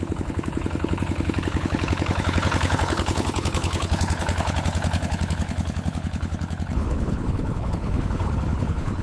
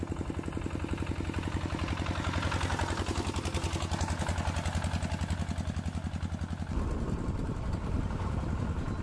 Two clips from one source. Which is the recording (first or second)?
second